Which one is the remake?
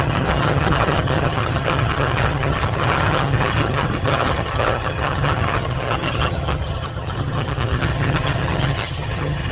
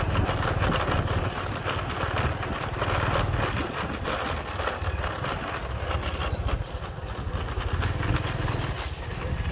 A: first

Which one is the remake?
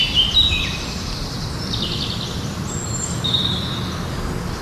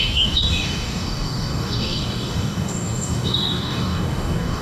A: second